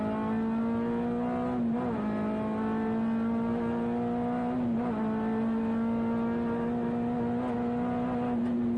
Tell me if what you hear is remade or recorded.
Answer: recorded